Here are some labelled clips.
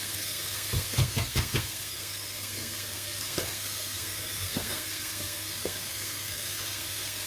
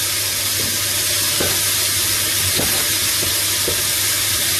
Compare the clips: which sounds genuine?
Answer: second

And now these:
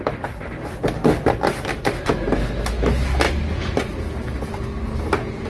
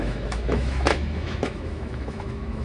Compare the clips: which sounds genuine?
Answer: first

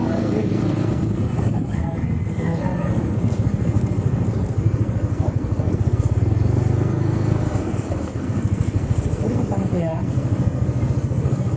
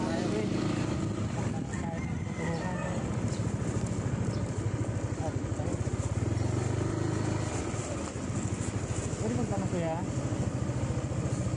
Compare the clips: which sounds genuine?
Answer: second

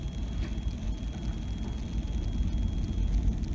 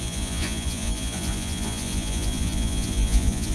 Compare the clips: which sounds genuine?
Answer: first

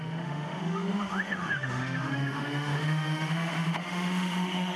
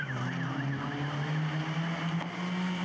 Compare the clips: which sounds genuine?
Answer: second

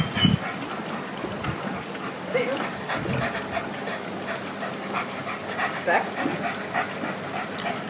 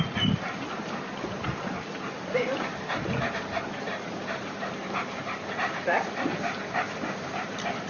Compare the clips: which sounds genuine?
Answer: first